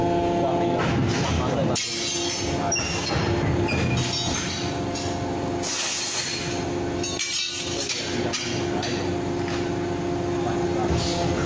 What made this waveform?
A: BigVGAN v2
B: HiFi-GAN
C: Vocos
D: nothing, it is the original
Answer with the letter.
D